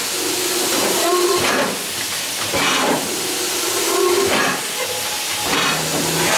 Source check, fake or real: real